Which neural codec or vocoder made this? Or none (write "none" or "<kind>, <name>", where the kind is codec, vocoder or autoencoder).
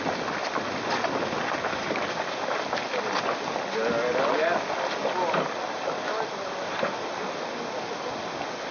none